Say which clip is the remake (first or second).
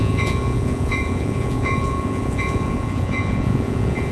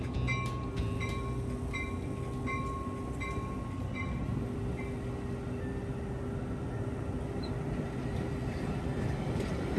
first